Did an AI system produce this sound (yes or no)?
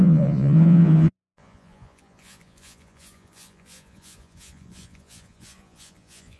yes